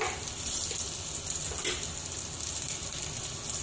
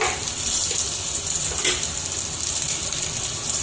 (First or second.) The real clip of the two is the first